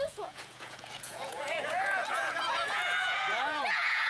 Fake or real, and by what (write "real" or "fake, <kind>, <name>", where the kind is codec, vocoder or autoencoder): fake, vocoder, Vocos